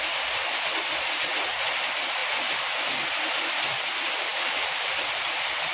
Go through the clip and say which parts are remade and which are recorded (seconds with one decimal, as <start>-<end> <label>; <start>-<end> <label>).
0.0-4.3 recorded; 4.3-5.3 remade; 5.3-5.7 recorded